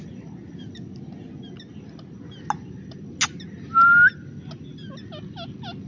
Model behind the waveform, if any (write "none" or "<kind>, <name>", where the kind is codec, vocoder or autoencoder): none